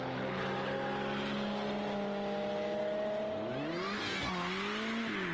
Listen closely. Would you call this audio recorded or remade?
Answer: recorded